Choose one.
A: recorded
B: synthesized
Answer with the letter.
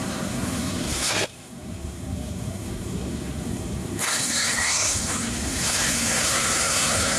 B